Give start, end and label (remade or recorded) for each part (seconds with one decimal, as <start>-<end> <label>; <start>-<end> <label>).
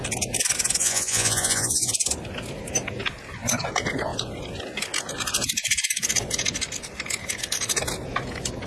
0.0-0.8 recorded; 0.8-1.9 remade; 1.9-8.7 recorded